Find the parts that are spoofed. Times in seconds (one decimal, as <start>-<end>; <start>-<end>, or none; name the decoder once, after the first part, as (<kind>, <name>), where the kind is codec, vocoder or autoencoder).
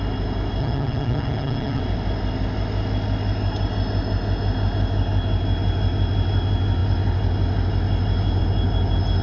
0.6-1.8 (vocoder, HiFi-GAN)